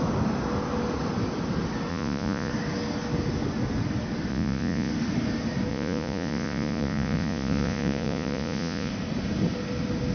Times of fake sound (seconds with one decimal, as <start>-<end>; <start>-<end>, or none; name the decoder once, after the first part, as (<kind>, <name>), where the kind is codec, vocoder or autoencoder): 1.9-2.5 (vocoder, Vocos); 4.3-4.9; 5.7-8.9

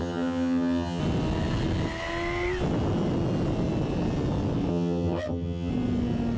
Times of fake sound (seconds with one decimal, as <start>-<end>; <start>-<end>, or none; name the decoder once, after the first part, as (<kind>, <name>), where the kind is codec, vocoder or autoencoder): 0.0-1.0 (vocoder, HiFi-GAN); 4.7-5.7